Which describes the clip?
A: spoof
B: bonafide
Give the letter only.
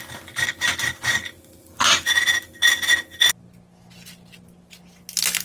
B